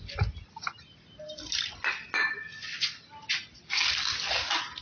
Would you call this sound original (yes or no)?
yes